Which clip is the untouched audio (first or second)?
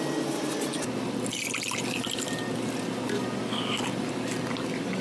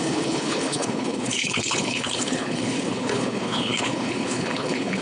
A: first